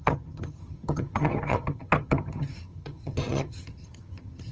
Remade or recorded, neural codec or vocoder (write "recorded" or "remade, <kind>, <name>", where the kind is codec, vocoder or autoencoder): remade, vocoder, HiFi-GAN